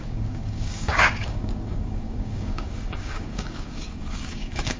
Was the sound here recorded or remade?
remade